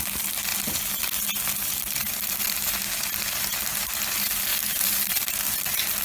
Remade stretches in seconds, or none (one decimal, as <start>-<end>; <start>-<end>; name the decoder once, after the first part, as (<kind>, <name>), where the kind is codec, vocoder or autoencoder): 4.5-5.4 (vocoder, BigVGAN v2)